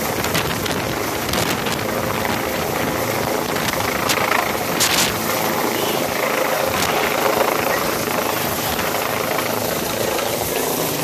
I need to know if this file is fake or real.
real